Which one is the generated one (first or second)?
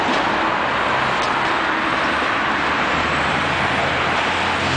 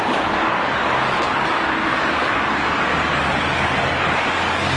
second